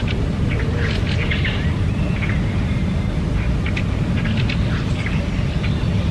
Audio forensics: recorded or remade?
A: recorded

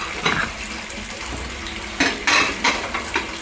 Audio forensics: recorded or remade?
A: recorded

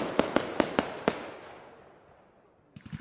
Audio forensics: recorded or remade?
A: recorded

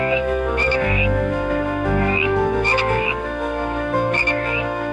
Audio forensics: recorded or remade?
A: remade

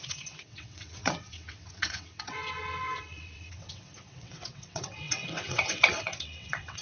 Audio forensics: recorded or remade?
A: remade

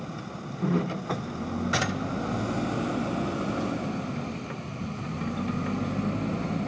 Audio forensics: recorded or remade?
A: recorded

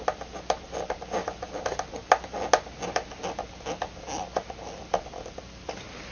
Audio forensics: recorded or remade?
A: recorded